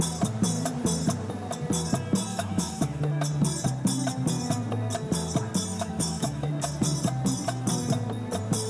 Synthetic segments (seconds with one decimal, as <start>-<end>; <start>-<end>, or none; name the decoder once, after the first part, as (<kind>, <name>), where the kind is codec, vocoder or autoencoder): 2.3-3.1 (autoencoder, DAC-VAE); 5.7-6.5